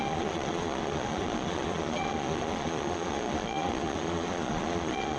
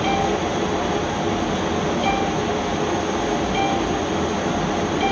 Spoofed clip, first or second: first